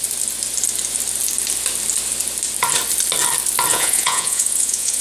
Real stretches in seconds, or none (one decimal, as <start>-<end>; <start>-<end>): 0.0-3.7